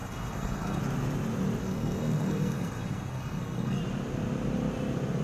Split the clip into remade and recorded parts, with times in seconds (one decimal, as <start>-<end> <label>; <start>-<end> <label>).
0.0-0.8 remade; 0.8-1.6 recorded; 1.6-3.8 remade; 3.8-5.2 recorded

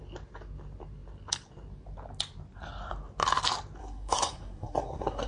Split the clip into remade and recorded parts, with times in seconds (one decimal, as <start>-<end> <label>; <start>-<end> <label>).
0.0-3.8 recorded; 3.8-5.3 remade